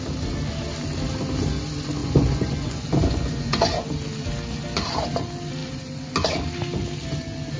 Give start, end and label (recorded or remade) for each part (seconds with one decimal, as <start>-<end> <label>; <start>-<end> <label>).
0.0-2.0 recorded; 2.0-3.9 remade; 3.9-7.6 recorded